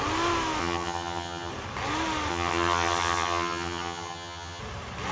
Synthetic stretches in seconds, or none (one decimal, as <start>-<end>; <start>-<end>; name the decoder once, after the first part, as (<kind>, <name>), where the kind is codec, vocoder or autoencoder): 0.6-1.5 (vocoder, HiFi-GAN); 2.3-4.6